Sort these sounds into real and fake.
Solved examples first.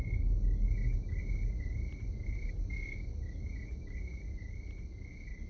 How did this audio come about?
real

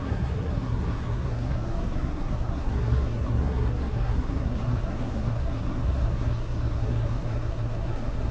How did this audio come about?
fake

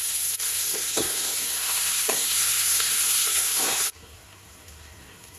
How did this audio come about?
fake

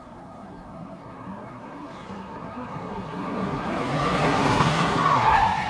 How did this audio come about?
fake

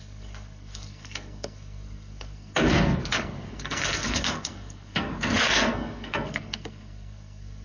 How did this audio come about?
fake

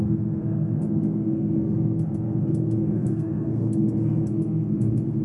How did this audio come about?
fake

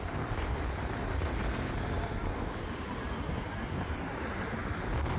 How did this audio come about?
real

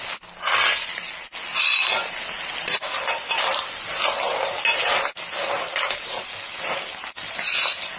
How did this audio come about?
real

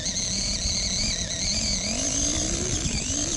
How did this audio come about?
real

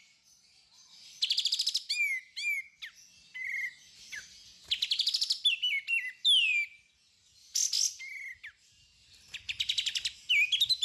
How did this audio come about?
real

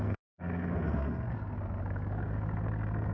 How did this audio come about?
fake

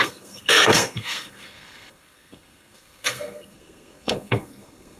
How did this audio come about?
fake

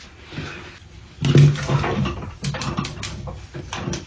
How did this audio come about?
real